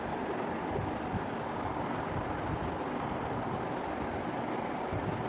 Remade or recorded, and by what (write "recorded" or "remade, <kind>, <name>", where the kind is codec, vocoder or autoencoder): recorded